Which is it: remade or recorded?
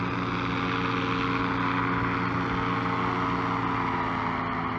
recorded